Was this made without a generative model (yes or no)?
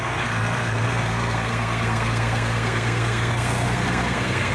no